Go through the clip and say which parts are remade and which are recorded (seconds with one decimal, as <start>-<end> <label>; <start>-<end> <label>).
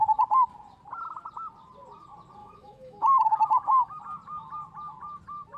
0.0-2.4 recorded; 2.4-4.0 remade; 4.0-5.6 recorded